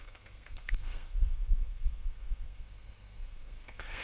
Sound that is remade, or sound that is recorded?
remade